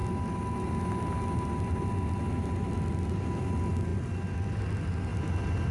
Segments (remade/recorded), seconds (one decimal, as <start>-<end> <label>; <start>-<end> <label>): 0.0-5.7 recorded